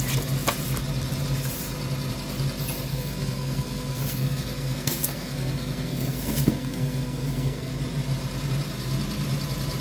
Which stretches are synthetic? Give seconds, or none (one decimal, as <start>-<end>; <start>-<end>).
2.9-7.7